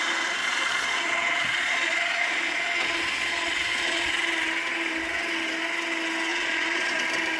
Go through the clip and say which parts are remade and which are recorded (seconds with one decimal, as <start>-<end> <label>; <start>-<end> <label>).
0.0-0.4 recorded; 0.4-4.1 remade; 4.1-6.3 recorded; 6.3-7.0 remade; 7.0-7.4 recorded